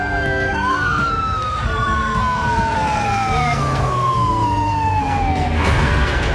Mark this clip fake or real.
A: fake